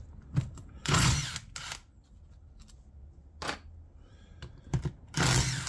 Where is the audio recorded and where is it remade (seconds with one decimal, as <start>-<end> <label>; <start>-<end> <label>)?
0.0-0.8 recorded; 0.8-1.3 remade; 1.3-5.7 recorded